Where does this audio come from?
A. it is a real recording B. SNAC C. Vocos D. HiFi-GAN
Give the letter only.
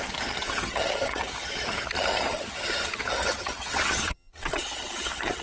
D